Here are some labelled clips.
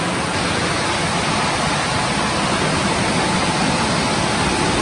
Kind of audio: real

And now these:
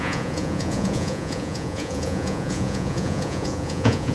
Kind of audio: fake